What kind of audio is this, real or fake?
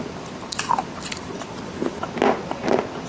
real